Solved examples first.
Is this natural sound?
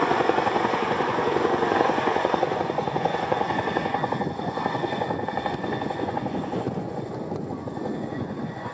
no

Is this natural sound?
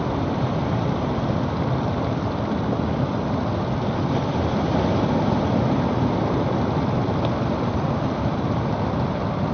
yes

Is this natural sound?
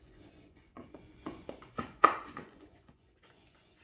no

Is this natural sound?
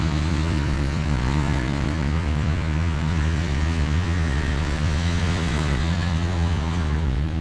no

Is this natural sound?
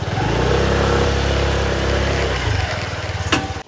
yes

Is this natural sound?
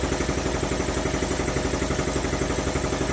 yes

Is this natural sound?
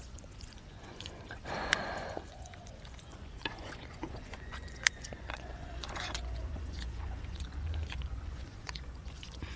no